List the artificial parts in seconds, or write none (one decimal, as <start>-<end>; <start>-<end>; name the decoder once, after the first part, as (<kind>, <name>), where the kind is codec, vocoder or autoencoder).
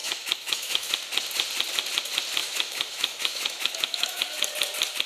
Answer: 0.0-0.9 (autoencoder, DAC-VAE); 2.4-4.2